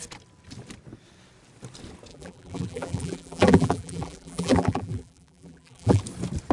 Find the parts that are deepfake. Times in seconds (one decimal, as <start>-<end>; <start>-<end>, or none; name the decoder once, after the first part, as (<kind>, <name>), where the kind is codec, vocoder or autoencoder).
2.1-6.0 (vocoder, BigVGAN v2)